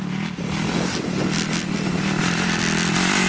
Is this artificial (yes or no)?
no